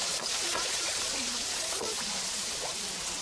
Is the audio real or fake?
fake